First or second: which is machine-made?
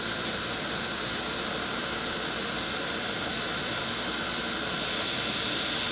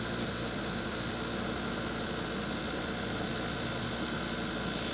first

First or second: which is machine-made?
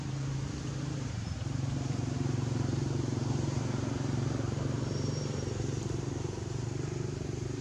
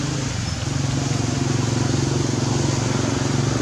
first